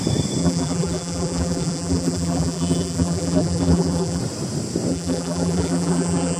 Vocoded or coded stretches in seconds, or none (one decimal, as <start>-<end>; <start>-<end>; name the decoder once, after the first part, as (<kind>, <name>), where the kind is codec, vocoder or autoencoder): 0.4-4.2 (vocoder, BigVGAN v2); 4.9-6.4